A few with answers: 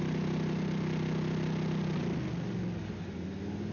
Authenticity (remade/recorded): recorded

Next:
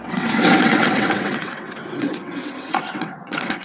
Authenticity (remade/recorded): remade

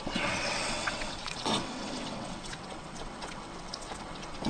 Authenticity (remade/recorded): remade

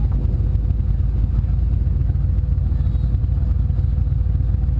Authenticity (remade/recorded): recorded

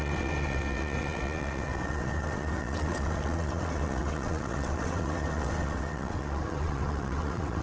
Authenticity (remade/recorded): remade